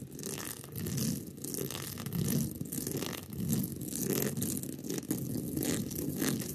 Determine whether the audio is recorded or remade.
recorded